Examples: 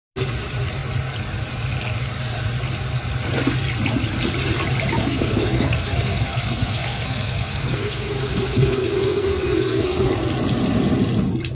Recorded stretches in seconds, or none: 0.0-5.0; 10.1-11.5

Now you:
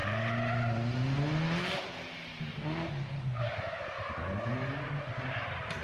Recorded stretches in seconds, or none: 0.0-5.8

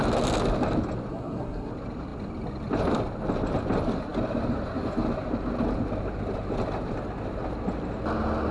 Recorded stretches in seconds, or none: 0.0-1.1; 1.7-8.5